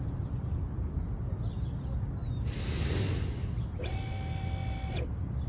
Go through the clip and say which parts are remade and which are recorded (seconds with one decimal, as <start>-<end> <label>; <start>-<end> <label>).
0.0-5.5 recorded